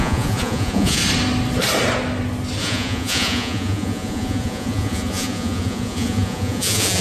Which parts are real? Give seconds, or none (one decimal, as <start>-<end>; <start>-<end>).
1.0-2.6